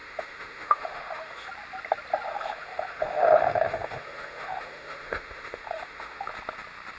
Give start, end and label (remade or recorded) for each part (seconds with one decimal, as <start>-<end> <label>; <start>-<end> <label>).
0.0-1.5 remade; 1.5-2.3 recorded; 2.3-6.3 remade; 6.3-7.0 recorded